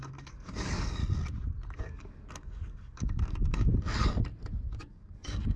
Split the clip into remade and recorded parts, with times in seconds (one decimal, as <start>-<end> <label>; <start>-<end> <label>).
0.0-1.0 remade; 1.0-1.8 recorded; 1.8-3.7 remade; 3.7-4.7 recorded; 4.7-5.6 remade